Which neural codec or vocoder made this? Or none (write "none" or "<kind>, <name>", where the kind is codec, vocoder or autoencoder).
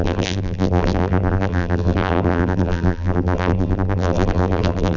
vocoder, BigVGAN v2